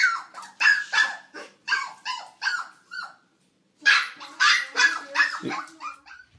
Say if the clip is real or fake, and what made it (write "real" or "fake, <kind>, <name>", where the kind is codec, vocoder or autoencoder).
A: fake, vocoder, BigVGAN v2